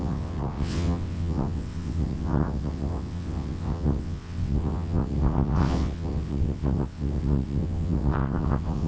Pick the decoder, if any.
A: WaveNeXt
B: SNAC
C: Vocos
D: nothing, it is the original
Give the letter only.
A